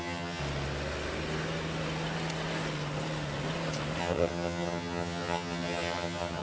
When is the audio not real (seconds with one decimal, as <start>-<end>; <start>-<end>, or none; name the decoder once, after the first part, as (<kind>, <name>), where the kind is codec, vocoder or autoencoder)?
0.0-0.4 (vocoder, HiFi-GAN); 4.0-6.4